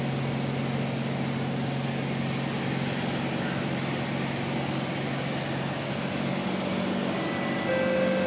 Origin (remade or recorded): recorded